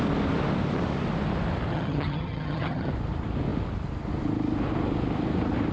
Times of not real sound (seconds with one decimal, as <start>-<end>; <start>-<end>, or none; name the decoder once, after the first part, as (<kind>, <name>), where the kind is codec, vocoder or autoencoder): 1.7-2.9 (vocoder, HiFi-GAN)

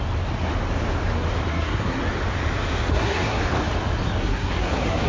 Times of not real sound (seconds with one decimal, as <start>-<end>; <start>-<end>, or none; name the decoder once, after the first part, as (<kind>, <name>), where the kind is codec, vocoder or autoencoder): 1.5-2.0 (codec, SNAC); 2.9-3.4; 4.2-5.1

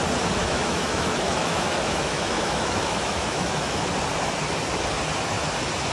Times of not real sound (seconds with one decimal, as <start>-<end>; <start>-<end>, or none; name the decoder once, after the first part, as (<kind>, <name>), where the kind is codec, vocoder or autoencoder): 0.4-3.9 (autoencoder, DAC-VAE)

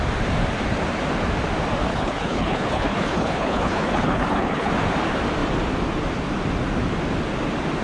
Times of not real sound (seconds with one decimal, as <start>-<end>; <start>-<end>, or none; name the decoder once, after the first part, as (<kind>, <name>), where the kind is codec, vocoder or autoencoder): 1.9-4.7 (codec, HILCodec)

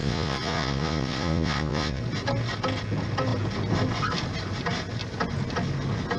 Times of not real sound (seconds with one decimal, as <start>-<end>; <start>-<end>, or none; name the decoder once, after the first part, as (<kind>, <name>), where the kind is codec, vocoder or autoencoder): 0.0-2.0 (vocoder, Vocos)

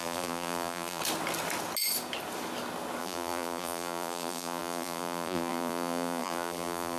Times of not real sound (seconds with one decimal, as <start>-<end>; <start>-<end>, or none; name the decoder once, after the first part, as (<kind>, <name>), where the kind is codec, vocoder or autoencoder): 0.0-1.0 (vocoder, BigVGAN v2); 3.0-7.0